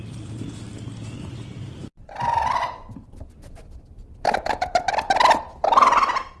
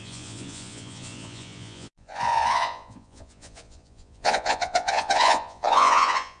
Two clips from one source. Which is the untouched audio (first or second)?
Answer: first